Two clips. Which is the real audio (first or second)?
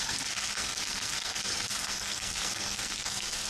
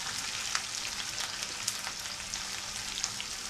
second